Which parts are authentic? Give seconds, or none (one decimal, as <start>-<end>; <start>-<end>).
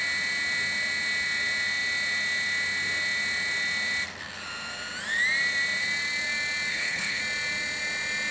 0.0-6.7; 7.2-8.3